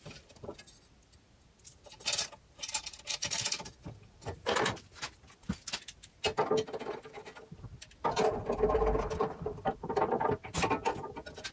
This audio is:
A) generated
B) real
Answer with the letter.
B